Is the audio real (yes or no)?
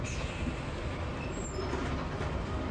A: yes